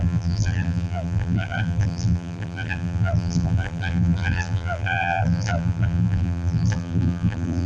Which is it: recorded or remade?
remade